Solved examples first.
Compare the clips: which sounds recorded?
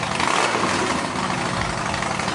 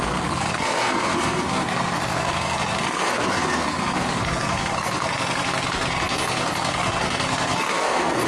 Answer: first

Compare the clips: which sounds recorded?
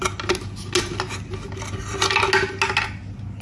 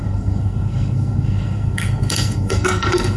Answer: first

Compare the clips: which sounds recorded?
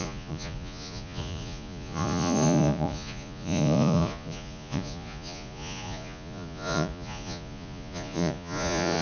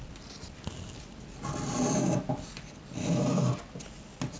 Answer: second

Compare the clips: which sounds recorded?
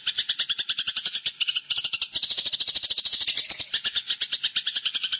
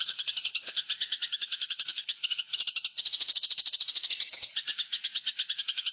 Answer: first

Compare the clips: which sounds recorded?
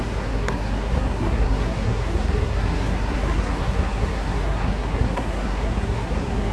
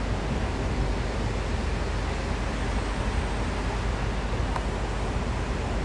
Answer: second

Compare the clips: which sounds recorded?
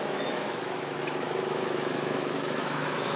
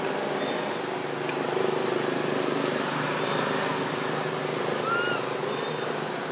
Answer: second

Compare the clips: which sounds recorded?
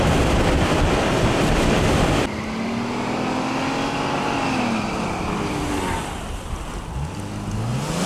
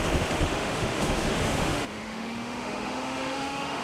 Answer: first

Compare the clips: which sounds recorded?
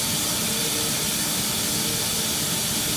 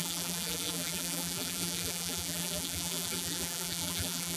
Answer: first